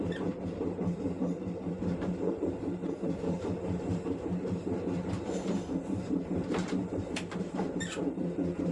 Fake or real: fake